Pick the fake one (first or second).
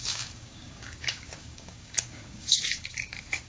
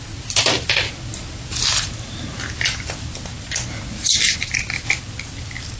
first